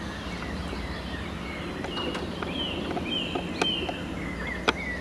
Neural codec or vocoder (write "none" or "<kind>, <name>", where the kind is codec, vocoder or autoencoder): none